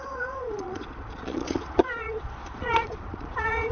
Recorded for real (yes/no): no